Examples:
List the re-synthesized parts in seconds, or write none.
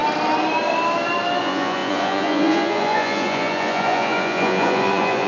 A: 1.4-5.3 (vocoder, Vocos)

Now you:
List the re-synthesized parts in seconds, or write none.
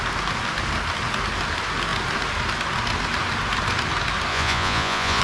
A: 4.3-5.2 (vocoder, Vocos)